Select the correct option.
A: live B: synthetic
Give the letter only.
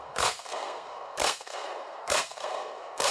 B